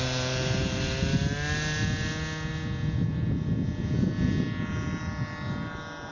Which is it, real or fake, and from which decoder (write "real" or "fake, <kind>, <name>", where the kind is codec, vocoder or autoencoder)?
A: real